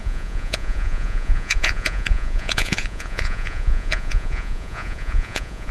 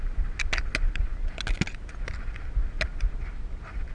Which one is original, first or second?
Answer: second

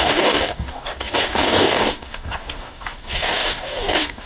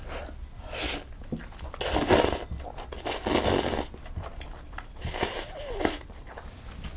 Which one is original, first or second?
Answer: second